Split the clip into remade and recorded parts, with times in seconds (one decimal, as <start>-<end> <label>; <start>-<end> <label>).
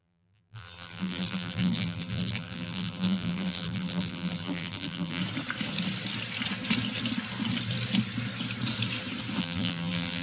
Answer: 0.0-5.2 remade; 5.2-9.4 recorded; 9.4-10.2 remade